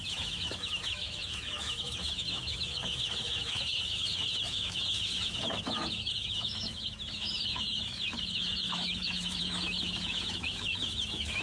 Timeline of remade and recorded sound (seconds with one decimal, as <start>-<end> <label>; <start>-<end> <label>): 0.0-11.4 remade